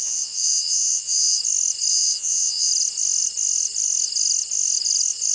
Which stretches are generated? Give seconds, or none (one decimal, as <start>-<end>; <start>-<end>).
0.0-1.4; 1.9-2.7